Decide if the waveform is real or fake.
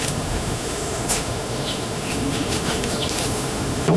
fake